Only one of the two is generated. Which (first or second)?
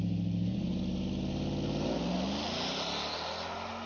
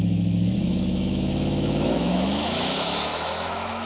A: second